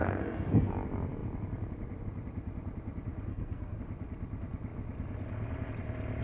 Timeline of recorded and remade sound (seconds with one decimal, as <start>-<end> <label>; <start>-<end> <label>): 0.0-0.7 remade; 0.7-3.3 recorded; 3.3-3.8 remade; 3.8-6.2 recorded